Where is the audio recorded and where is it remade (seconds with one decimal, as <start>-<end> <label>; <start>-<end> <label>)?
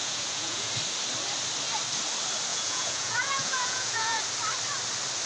0.0-0.7 remade; 0.7-2.5 recorded; 2.5-4.2 remade; 4.2-5.3 recorded